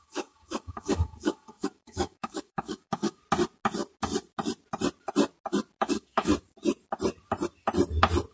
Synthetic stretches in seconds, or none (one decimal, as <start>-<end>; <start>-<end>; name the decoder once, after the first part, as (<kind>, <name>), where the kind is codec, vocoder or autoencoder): 0.0-3.2 (codec, DAC); 5.8-6.3